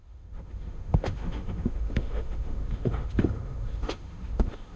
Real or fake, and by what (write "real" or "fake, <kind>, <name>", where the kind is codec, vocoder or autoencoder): fake, autoencoder, DAC-VAE